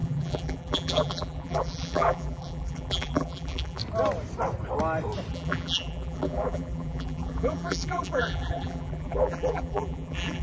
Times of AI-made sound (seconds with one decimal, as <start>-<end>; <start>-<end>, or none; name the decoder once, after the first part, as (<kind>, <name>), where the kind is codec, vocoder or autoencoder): 0.0-3.8 (vocoder, BigVGAN v2); 5.3-10.4